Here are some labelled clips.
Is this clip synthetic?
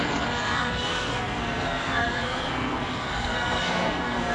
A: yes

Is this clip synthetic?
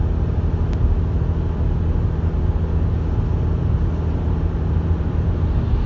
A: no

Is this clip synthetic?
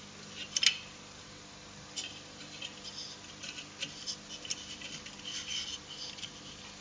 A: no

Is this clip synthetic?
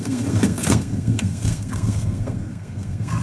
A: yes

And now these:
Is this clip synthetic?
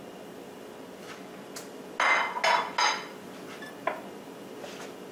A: no